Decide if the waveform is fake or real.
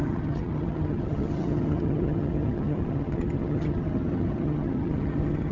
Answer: fake